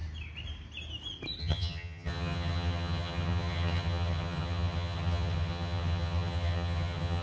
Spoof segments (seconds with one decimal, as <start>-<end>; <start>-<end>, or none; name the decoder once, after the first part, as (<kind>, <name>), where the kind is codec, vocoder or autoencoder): 1.4-7.2 (vocoder, HiFi-GAN)